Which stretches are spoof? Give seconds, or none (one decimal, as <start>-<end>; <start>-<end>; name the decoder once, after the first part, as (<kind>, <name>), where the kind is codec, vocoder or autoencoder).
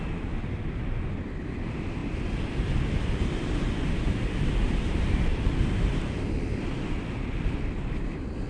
none